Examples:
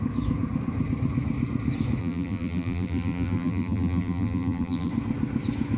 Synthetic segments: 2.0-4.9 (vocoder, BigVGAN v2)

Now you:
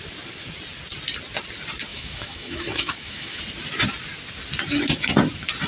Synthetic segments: 1.9-3.4 (autoencoder, DAC-VAE)